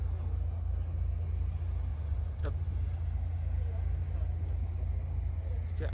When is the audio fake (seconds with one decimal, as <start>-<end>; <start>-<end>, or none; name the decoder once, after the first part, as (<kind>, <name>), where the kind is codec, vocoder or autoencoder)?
1.9-2.5 (vocoder, Vocos)